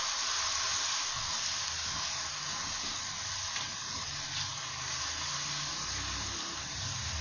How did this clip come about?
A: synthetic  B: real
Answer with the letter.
B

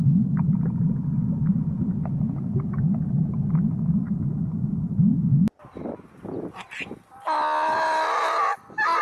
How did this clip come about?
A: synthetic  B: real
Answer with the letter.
B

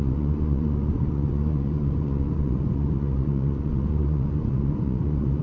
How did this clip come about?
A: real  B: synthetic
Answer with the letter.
B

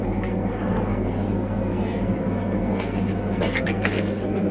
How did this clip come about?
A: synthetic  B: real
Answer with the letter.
A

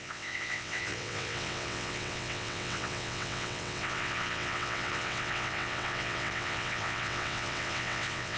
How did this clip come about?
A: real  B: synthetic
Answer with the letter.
B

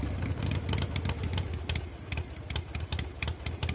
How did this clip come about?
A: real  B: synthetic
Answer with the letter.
A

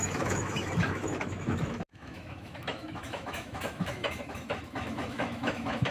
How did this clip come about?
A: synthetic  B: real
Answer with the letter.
A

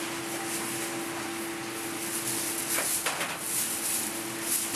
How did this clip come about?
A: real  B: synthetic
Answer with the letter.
A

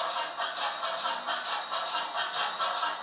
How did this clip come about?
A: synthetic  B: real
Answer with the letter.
B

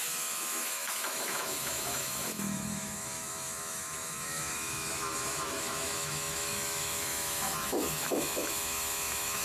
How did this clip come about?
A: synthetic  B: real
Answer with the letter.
A